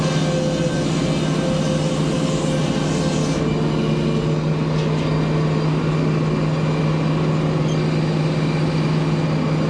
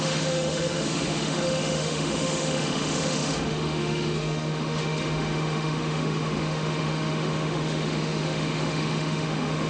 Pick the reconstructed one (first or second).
second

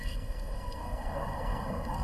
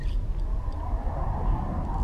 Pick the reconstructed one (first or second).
first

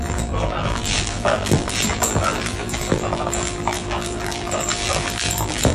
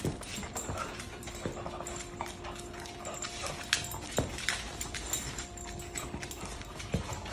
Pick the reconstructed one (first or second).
first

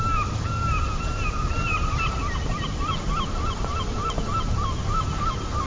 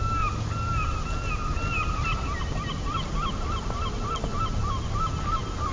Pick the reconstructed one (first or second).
first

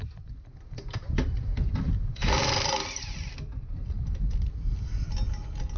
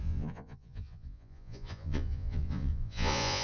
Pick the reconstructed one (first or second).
second